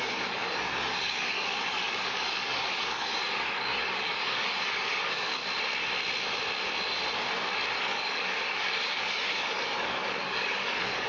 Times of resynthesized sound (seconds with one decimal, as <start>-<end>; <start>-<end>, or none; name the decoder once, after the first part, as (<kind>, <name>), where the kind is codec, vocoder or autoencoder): 0.0-5.4 (codec, DAC); 7.8-11.1